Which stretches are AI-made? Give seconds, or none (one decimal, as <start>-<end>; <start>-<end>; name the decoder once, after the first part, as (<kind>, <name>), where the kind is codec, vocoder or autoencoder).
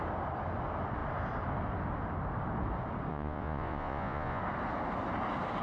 3.1-4.4 (vocoder, Vocos)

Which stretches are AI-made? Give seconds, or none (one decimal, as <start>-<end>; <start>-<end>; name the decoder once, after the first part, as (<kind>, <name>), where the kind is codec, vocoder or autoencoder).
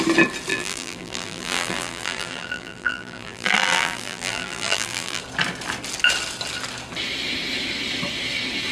0.5-5.2 (vocoder, BigVGAN v2)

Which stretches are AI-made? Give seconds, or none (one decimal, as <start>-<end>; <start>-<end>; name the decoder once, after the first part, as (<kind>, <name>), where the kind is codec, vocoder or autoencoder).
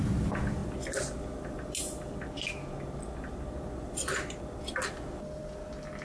none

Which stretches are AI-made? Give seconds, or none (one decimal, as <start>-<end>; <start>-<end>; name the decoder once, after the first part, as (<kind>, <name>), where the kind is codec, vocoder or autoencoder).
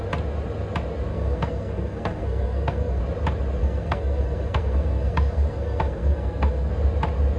1.1-3.0 (codec, SNAC); 3.6-6.7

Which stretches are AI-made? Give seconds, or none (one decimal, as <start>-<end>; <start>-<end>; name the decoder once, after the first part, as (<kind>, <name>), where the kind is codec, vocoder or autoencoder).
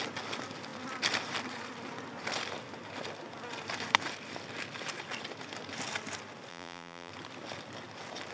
6.5-7.1 (vocoder, BigVGAN v2)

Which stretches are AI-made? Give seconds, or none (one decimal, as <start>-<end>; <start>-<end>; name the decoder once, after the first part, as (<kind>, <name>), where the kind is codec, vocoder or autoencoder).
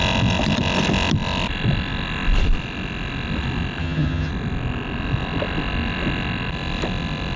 3.8-4.3 (vocoder, HiFi-GAN)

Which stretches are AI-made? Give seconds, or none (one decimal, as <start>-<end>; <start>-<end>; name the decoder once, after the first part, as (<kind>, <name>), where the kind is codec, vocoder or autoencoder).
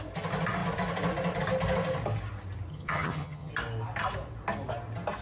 2.7-3.5 (vocoder, HiFi-GAN)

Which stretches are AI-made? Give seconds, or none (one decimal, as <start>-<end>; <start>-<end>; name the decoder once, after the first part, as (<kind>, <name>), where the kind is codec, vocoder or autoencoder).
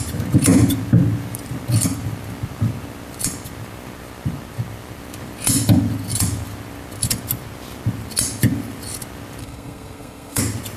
9.4-10.4 (codec, SNAC)